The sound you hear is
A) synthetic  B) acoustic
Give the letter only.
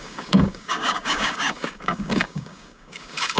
A